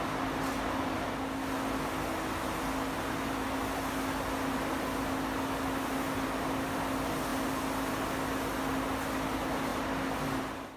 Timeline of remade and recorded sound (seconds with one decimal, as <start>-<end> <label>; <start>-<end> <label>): 0.0-10.8 recorded